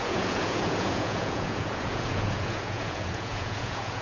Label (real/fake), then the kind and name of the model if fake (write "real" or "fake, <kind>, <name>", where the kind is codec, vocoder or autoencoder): fake, vocoder, Vocos